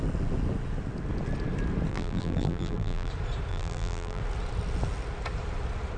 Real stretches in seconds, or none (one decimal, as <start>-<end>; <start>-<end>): 0.0-1.9; 3.1-3.5; 4.2-6.0